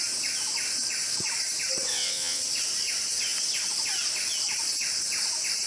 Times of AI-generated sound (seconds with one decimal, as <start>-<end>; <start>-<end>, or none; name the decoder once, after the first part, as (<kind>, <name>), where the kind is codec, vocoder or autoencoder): 1.9-2.4 (vocoder, WaveNeXt)